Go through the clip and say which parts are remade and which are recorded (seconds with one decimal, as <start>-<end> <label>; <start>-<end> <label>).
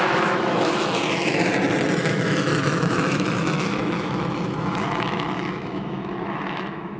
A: 0.0-1.5 remade; 1.5-2.0 recorded; 2.0-7.0 remade